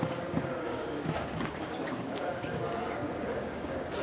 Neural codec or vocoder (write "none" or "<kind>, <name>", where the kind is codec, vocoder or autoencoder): codec, DAC